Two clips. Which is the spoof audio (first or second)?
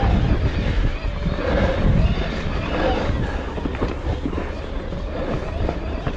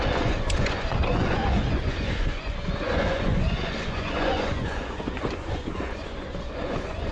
second